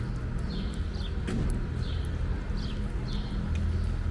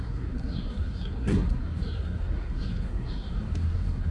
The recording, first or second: first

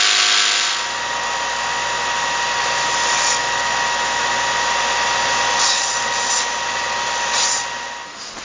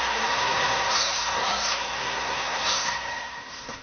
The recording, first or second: first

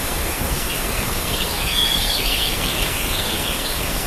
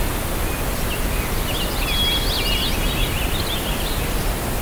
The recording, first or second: second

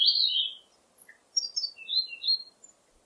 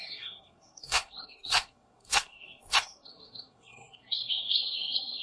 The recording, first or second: first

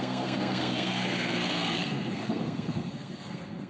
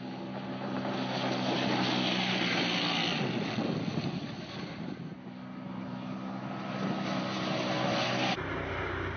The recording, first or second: second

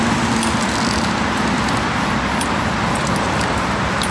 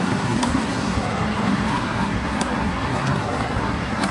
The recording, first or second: first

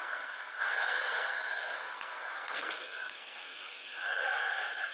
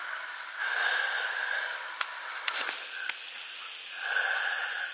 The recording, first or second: second